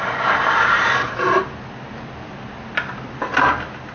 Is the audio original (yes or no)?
yes